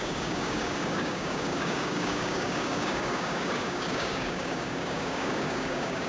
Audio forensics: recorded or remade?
remade